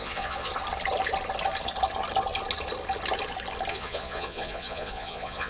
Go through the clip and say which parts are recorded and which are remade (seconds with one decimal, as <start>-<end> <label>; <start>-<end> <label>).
0.0-0.5 remade; 0.5-3.7 recorded; 3.7-5.5 remade